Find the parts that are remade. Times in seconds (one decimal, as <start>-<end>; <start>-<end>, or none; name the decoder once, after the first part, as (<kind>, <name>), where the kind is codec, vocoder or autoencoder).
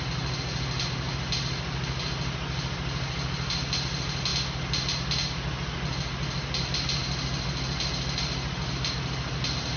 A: none